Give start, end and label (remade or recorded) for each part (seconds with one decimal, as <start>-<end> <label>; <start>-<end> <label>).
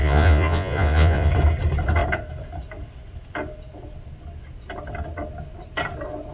0.0-1.3 remade; 1.3-6.3 recorded